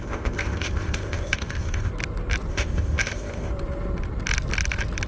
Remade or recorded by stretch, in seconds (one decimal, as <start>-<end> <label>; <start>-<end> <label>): 0.0-1.9 remade; 1.9-2.5 recorded; 2.5-3.5 remade; 3.5-5.1 recorded